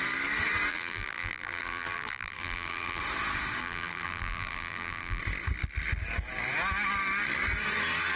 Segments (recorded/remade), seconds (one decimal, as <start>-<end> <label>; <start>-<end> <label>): 0.0-0.7 recorded; 0.7-3.0 remade; 3.0-3.6 recorded; 3.6-5.2 remade; 5.2-8.2 recorded